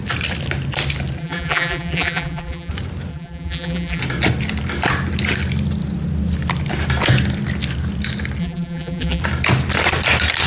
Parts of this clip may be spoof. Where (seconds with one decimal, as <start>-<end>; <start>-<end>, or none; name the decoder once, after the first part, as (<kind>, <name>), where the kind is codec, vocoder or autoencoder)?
1.2-2.7 (vocoder, BigVGAN v2); 3.1-4.0; 8.4-9.2